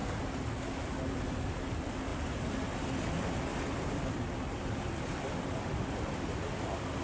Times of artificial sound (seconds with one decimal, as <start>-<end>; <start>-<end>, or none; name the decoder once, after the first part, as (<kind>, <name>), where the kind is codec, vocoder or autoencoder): none